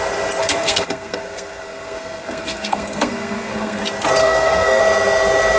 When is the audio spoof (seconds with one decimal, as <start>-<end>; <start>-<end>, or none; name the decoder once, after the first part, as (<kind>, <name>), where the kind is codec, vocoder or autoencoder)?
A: 0.4-3.8 (codec, SNAC); 4.2-4.8

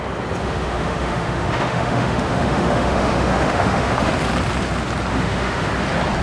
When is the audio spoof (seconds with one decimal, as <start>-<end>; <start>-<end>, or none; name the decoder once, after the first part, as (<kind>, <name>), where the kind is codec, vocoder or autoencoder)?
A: 0.4-4.1 (autoencoder, DAC-VAE); 5.1-5.7

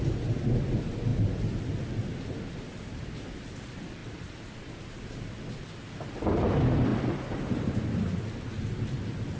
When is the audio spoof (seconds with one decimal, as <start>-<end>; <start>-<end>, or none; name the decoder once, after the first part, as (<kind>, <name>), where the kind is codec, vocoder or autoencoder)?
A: 6.9-8.2 (vocoder, BigVGAN v2)

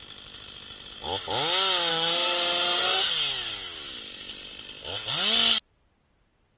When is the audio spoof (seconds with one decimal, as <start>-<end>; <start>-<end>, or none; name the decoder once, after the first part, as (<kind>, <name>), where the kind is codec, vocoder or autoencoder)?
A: 1.9-3.1 (autoencoder, DAC-VAE)

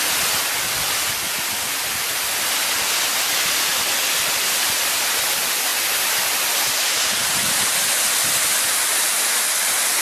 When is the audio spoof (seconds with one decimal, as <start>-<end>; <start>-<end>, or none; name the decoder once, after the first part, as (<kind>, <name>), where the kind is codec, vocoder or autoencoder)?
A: none

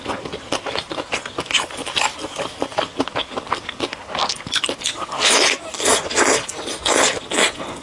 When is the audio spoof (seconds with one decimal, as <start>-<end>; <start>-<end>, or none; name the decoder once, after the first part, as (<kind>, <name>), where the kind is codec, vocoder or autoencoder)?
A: none

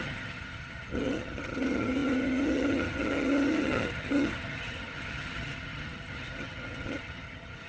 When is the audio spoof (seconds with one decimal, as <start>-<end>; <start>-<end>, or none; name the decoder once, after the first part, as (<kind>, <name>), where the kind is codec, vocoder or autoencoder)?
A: 0.0-7.7 (vocoder, HiFi-GAN)